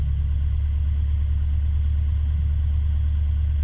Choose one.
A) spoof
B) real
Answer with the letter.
B